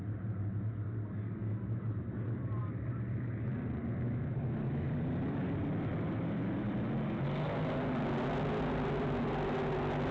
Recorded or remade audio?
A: recorded